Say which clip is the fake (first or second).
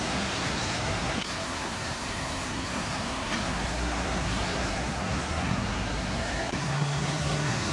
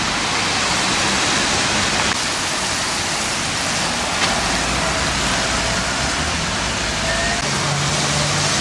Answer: first